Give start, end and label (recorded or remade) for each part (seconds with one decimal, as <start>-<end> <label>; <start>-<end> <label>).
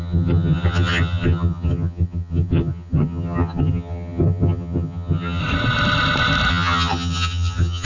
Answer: 0.0-5.4 remade; 5.4-6.5 recorded; 6.5-7.8 remade